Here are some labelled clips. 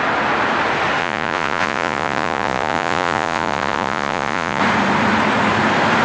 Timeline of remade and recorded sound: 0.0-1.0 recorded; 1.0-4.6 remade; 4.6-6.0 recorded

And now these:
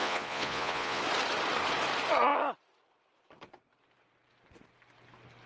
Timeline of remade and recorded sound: 0.0-1.0 remade; 1.0-5.5 recorded

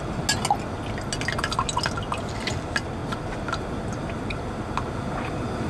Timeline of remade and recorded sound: 0.0-5.7 recorded

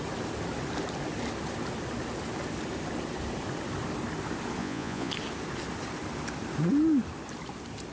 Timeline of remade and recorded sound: 0.0-4.6 recorded; 4.6-5.1 remade; 5.1-7.9 recorded

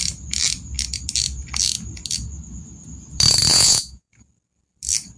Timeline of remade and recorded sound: 0.0-3.5 recorded; 3.5-4.1 remade; 4.1-5.2 recorded

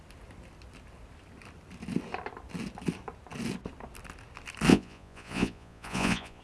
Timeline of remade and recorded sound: 0.0-4.7 recorded; 4.7-6.4 remade

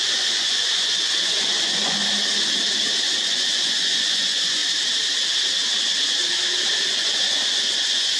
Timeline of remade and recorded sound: 0.0-2.0 remade; 2.0-3.0 recorded; 3.0-4.6 remade; 4.6-5.8 recorded; 5.8-6.2 remade; 6.2-6.9 recorded; 6.9-8.2 remade

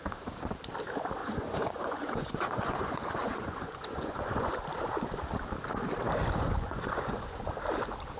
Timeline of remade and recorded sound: 0.0-1.2 recorded; 1.2-4.5 remade; 4.5-6.2 recorded; 6.2-7.4 remade; 7.4-8.2 recorded